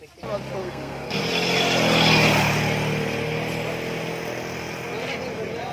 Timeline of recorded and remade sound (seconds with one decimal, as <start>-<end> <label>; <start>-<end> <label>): 0.0-0.6 recorded; 0.6-1.2 remade; 1.2-5.7 recorded

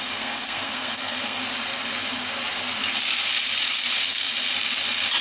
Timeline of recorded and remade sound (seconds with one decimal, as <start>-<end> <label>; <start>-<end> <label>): 0.0-1.4 remade; 1.4-3.9 recorded; 3.9-4.3 remade; 4.3-5.2 recorded

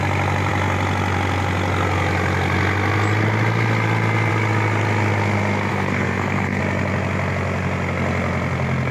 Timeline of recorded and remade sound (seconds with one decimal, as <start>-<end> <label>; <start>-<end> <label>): 0.0-5.7 recorded; 5.7-6.6 remade; 6.6-8.9 recorded

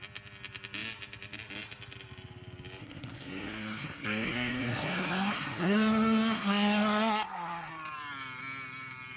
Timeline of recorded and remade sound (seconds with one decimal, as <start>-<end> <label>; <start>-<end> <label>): 0.0-2.8 recorded; 2.8-7.7 remade; 7.7-9.2 recorded